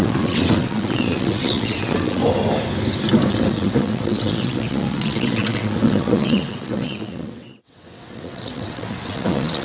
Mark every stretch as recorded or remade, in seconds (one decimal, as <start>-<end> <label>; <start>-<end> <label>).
0.0-2.2 remade; 2.2-3.3 recorded; 3.3-9.6 remade